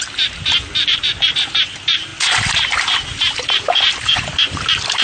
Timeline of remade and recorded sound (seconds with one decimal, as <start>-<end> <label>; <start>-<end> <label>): 0.0-2.1 remade; 2.1-3.5 recorded; 3.5-5.0 remade